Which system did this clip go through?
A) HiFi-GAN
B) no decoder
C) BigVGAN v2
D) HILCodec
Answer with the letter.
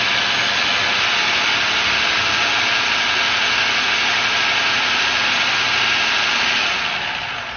B